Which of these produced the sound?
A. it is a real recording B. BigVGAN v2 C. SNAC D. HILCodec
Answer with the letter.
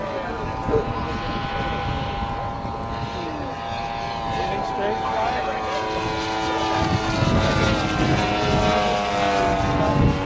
A